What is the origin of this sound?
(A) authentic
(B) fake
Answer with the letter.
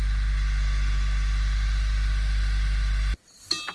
A